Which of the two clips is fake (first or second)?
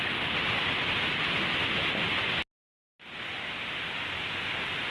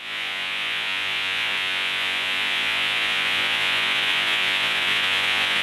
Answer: second